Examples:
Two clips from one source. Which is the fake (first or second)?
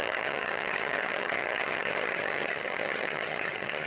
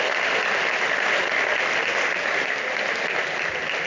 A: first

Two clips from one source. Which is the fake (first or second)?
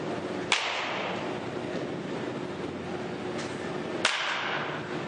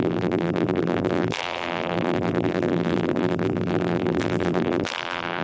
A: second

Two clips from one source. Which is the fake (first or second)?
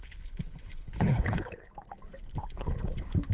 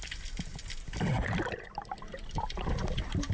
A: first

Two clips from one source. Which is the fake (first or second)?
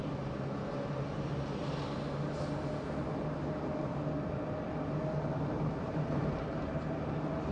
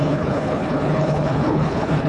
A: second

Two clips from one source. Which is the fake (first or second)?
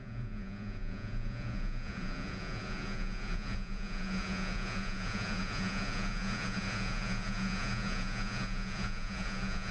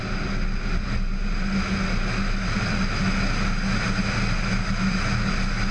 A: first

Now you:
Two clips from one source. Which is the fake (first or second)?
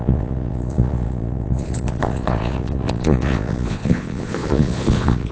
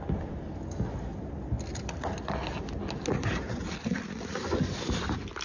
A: first